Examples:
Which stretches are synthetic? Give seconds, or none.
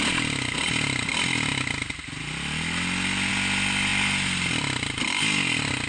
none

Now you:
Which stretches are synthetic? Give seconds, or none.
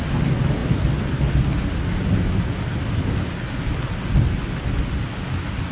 none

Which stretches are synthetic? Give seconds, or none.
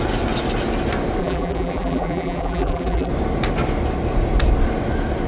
1.2-3.1 (vocoder, BigVGAN v2)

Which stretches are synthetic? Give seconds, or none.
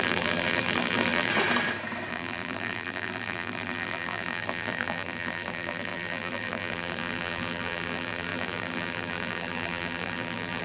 0.0-1.3 (vocoder, BigVGAN v2); 2.1-10.6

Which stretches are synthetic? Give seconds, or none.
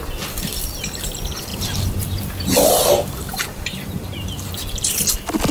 3.3-4.5 (vocoder, BigVGAN v2)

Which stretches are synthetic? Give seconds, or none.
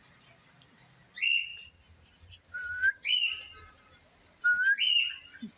1.5-4.4 (vocoder, BigVGAN v2)